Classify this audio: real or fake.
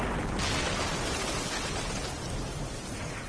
real